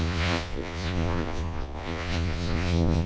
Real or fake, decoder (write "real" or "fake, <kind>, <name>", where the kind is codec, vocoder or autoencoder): fake, vocoder, Vocos